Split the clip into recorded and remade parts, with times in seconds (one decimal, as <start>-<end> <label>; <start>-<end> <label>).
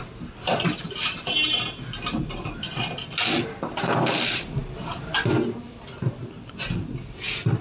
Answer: 0.0-7.6 recorded